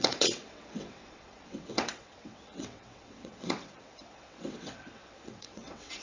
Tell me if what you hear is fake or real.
fake